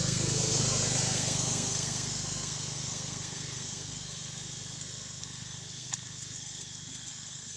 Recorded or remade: remade